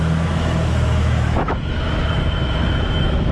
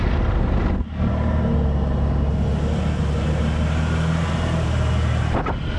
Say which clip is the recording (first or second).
second